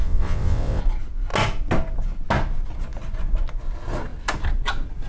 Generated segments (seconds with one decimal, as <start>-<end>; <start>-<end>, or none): 0.0-0.8